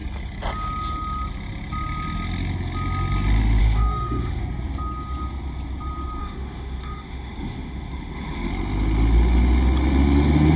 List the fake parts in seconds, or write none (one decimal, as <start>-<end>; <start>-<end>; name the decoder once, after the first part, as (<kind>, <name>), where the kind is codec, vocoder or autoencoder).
3.6-4.4 (autoencoder, DAC-VAE); 6.2-8.5